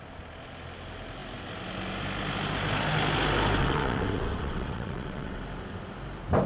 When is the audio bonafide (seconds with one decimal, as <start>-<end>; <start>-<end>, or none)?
0.0-3.6; 5.4-6.5

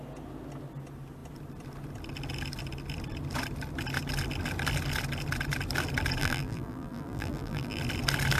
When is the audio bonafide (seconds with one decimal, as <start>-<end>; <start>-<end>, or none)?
0.0-6.2; 7.8-8.4